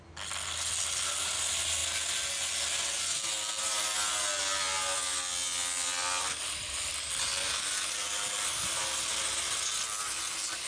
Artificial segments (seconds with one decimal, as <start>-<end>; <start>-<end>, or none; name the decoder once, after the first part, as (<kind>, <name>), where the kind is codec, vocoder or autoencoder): none